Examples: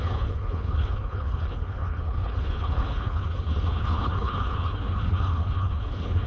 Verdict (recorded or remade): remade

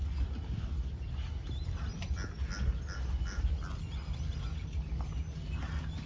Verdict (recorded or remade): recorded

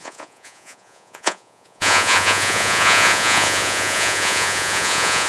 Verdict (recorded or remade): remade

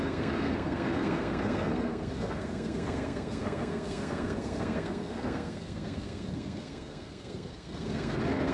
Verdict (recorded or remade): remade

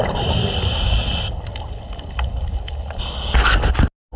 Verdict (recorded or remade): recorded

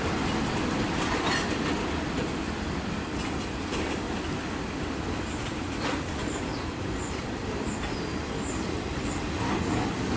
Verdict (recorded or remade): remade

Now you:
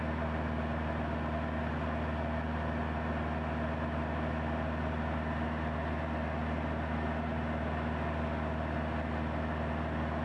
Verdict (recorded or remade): recorded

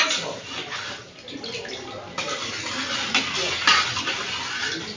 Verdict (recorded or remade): recorded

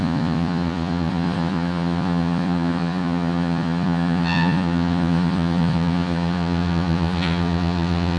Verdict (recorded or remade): remade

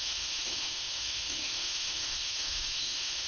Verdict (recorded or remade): remade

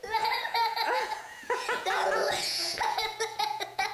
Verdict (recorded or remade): remade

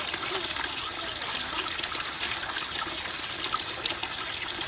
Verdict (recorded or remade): recorded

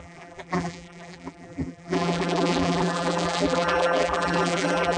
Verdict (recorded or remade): remade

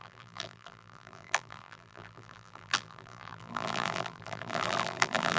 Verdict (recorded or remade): remade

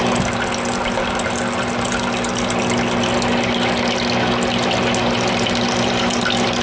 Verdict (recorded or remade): recorded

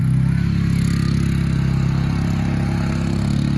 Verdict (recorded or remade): recorded